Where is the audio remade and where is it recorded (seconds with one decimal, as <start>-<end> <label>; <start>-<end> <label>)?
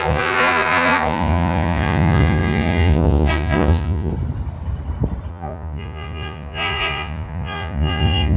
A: 0.0-4.1 remade; 4.1-5.3 recorded; 5.3-8.4 remade